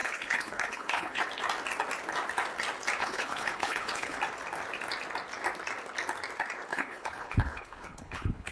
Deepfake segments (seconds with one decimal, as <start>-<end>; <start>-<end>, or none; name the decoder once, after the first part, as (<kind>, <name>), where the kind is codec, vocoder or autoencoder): 0.0-1.2 (codec, HILCodec); 3.0-4.2; 6.7-8.5